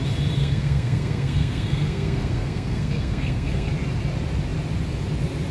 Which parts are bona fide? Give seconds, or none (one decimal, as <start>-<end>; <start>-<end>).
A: 0.0-0.4; 3.7-5.5